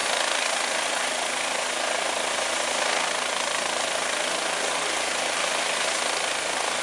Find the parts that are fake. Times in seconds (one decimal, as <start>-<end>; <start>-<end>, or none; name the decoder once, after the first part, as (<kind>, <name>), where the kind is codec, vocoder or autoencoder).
none